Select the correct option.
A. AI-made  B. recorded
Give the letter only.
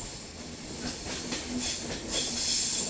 B